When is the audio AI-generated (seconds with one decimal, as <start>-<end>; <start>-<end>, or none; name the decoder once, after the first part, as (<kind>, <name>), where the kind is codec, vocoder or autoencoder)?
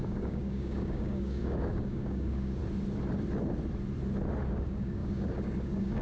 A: 0.0-2.6 (codec, DAC); 4.5-6.0